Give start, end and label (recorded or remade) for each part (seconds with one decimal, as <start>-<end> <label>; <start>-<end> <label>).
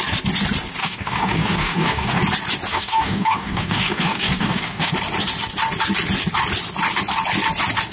0.0-0.8 recorded; 0.8-2.2 remade; 2.2-2.7 recorded; 2.7-4.9 remade; 4.9-7.9 recorded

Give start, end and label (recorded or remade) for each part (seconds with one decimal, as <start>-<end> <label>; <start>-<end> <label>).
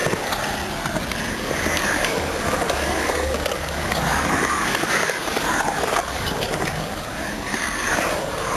0.0-1.3 recorded; 1.3-8.6 remade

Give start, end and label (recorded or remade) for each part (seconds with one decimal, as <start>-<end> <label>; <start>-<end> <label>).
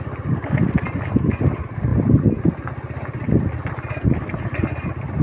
0.0-5.2 recorded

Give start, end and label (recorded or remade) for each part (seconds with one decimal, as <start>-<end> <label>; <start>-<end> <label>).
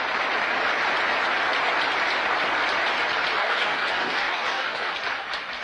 0.0-3.4 recorded; 3.4-4.9 remade; 4.9-5.6 recorded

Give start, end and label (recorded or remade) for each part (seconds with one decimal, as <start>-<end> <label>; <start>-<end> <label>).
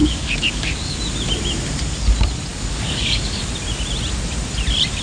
0.0-1.0 remade; 1.0-2.5 recorded; 2.5-3.4 remade; 3.4-5.0 recorded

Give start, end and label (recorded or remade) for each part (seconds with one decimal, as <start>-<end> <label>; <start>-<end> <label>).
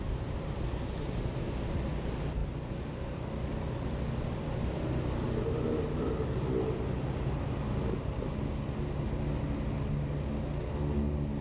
0.0-11.4 recorded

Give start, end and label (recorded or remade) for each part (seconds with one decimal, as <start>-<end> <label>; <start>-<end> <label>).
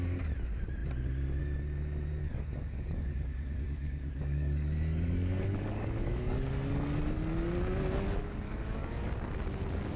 0.0-2.2 recorded; 2.2-6.4 remade; 6.4-8.2 recorded; 8.2-9.1 remade; 9.1-10.0 recorded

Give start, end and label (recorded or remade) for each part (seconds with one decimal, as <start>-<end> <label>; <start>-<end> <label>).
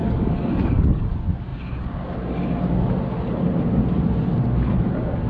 0.0-1.1 remade; 1.1-5.3 recorded